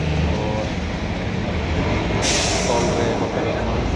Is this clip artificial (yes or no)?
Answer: no